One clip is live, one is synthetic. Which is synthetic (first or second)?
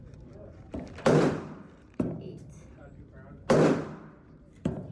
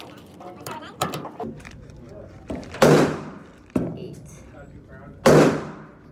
first